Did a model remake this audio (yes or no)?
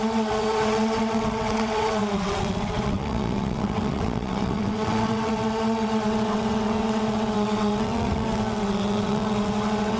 yes